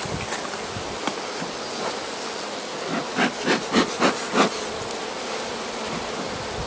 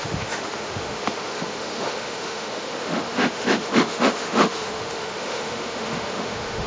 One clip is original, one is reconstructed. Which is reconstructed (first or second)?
second